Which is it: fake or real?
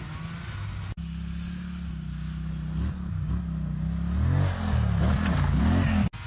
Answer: real